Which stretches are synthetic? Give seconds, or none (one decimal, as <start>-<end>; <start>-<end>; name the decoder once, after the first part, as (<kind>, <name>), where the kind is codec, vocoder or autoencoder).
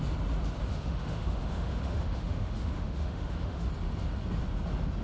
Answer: 0.7-3.7 (autoencoder, DAC-VAE)